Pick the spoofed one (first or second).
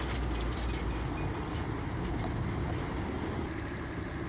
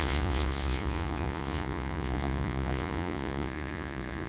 second